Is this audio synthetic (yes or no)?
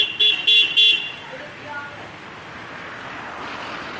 no